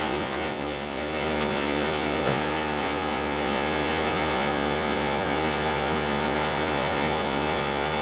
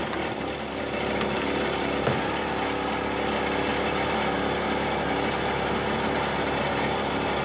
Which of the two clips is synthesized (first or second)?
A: first